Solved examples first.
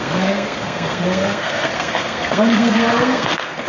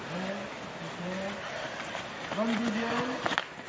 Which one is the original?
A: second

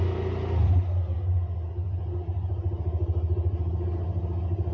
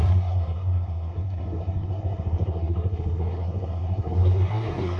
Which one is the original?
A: first